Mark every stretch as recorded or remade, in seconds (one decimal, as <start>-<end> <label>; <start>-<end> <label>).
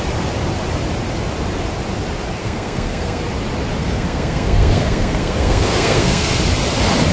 0.0-2.4 recorded; 2.4-3.2 remade; 3.2-3.8 recorded; 3.8-6.4 remade; 6.4-7.1 recorded